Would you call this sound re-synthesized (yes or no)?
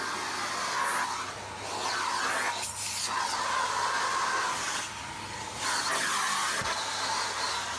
no